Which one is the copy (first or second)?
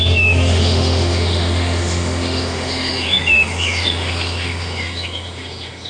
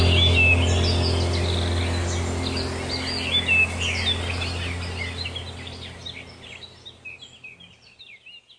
first